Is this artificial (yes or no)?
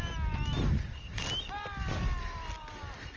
no